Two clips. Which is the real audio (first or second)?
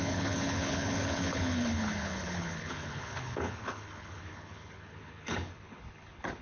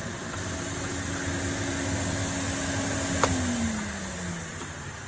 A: second